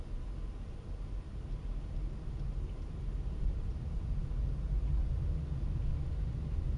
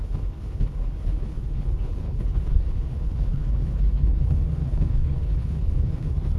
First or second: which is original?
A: first